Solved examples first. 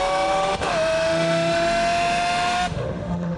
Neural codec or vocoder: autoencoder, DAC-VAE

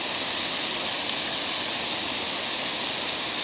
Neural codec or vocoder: none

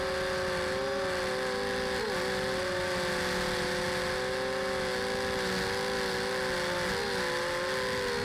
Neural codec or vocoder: none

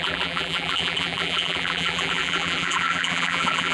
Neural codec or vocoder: vocoder, BigVGAN v2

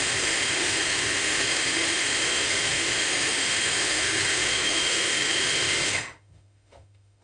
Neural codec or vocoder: autoencoder, DAC-VAE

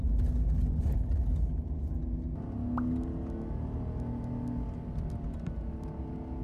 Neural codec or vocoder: none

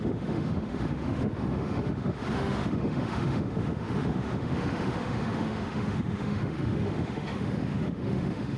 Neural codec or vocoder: autoencoder, DAC-VAE